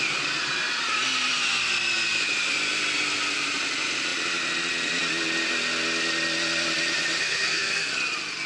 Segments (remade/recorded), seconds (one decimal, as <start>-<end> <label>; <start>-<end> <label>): 0.0-7.2 recorded; 7.2-7.9 remade; 7.9-8.5 recorded